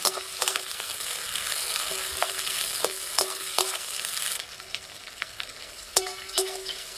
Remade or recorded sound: remade